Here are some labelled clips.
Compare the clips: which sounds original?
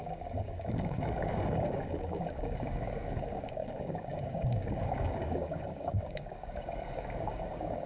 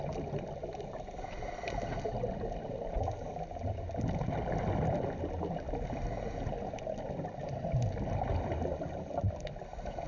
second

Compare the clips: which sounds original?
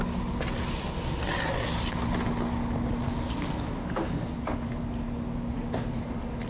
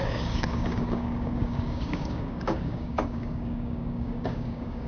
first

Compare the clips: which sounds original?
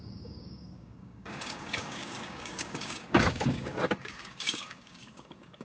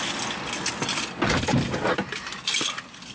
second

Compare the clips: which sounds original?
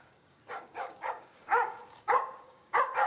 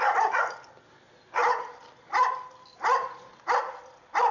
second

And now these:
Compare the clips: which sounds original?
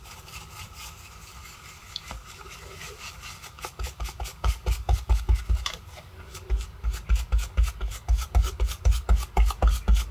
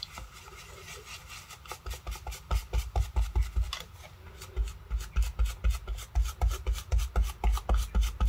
second